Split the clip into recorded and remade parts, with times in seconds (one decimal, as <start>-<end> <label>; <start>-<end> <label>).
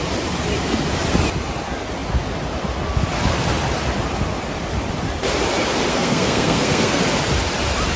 0.0-5.9 recorded; 5.9-7.0 remade; 7.0-8.0 recorded